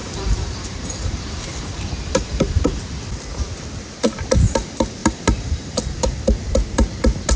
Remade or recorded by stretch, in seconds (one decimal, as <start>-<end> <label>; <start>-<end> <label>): 0.0-2.8 remade; 2.8-5.0 recorded; 5.0-5.8 remade; 5.8-7.4 recorded